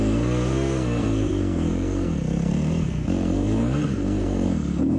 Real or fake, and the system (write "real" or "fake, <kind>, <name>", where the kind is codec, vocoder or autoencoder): fake, codec, SNAC